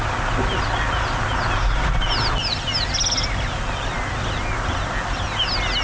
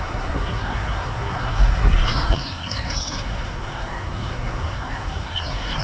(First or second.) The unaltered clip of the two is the first